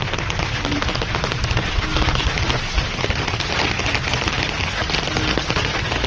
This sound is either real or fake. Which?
real